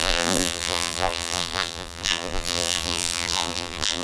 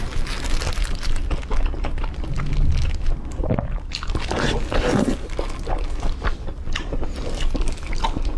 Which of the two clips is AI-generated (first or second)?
first